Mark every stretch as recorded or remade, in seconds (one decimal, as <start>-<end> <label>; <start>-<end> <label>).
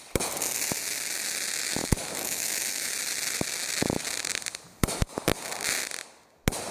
0.0-1.8 recorded; 1.8-2.9 remade; 2.9-6.7 recorded